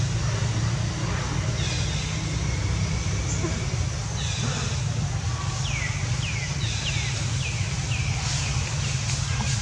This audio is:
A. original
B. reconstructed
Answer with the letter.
A